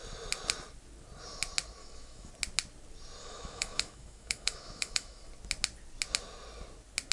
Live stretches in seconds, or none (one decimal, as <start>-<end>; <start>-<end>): 0.0-1.8; 2.3-3.2; 5.3-7.1